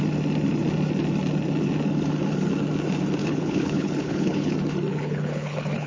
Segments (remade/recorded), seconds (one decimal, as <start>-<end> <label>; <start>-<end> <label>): 0.0-3.2 recorded; 3.2-4.5 remade; 4.5-4.9 recorded; 4.9-5.9 remade